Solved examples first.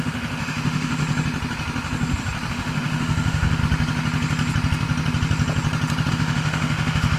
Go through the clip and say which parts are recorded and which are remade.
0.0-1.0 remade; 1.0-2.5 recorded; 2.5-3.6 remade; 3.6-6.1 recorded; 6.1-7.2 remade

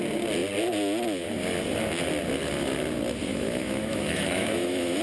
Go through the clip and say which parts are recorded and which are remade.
0.0-3.3 recorded; 3.3-5.0 remade

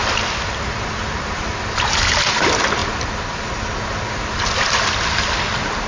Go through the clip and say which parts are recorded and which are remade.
0.0-5.9 recorded

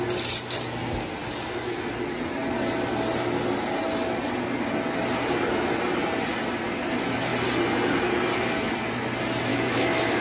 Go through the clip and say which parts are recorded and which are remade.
0.0-9.5 recorded; 9.5-10.2 remade

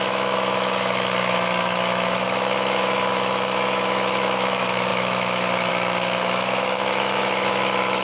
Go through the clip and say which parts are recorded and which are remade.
0.0-8.0 remade

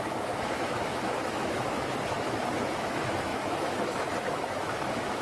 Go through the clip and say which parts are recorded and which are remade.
0.0-5.2 remade

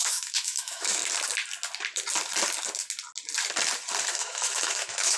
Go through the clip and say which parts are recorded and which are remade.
0.0-1.0 remade; 1.0-4.1 recorded; 4.1-5.2 remade